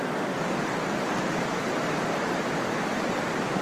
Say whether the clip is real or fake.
real